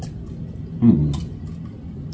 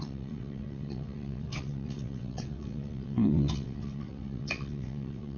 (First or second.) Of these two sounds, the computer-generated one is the second